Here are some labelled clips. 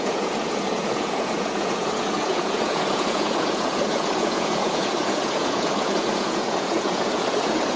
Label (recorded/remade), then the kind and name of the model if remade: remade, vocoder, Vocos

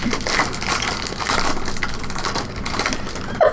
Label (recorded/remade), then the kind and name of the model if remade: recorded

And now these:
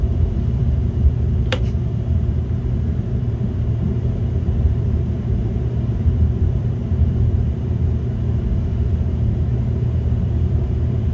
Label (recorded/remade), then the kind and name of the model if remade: remade, vocoder, BigVGAN v2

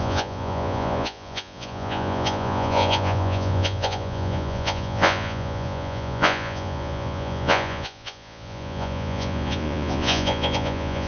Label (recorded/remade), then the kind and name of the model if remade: remade, vocoder, Vocos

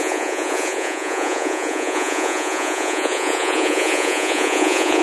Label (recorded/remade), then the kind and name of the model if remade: remade, vocoder, Vocos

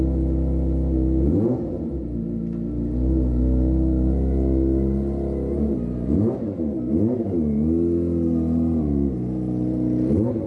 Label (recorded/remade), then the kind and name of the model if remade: recorded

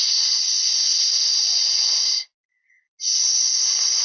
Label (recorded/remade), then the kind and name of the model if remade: recorded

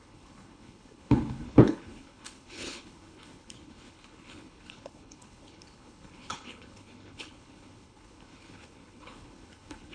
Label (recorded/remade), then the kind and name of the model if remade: remade, codec, HILCodec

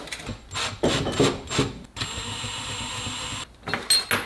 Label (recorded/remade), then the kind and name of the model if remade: recorded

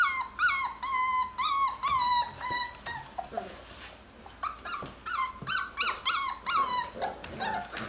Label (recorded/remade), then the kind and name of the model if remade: recorded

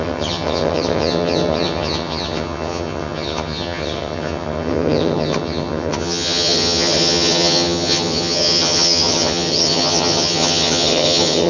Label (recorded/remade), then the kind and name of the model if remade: remade, vocoder, HiFi-GAN